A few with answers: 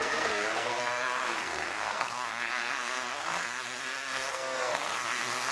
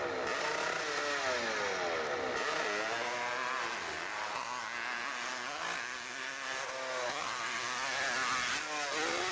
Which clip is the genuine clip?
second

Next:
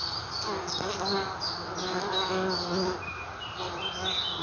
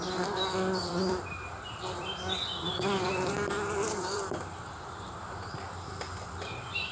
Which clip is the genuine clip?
first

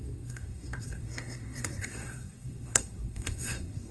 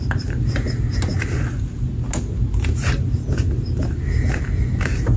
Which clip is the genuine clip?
second